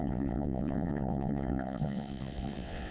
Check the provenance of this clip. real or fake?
fake